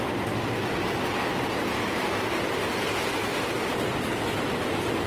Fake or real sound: real